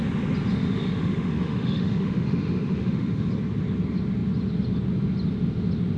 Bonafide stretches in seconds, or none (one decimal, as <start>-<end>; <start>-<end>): 0.0-0.5; 3.3-6.0